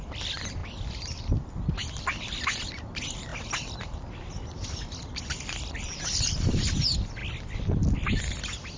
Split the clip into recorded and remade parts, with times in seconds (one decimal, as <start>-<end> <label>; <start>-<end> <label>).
0.0-8.8 recorded